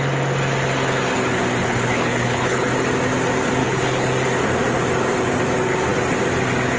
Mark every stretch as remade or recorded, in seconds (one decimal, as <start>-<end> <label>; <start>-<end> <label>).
0.0-1.6 recorded; 1.6-2.7 remade; 2.7-3.6 recorded; 3.6-4.1 remade; 4.1-6.8 recorded